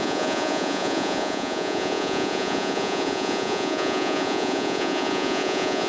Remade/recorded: remade